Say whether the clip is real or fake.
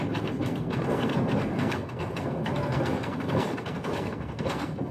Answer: fake